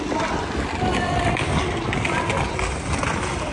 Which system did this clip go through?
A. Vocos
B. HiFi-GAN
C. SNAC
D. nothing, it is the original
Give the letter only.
D